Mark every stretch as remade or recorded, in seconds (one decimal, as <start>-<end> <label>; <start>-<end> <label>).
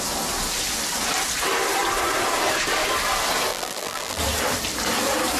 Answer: 0.0-3.5 recorded; 3.5-4.2 remade; 4.2-5.4 recorded